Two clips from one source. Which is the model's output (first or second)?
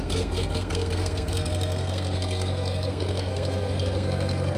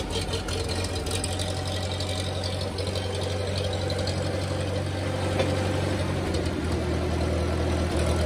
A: first